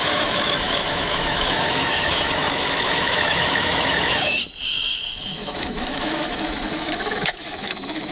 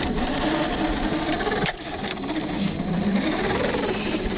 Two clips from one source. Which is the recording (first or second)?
second